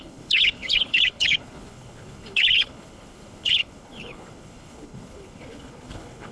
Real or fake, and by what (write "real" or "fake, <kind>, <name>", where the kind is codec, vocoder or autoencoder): fake, codec, HILCodec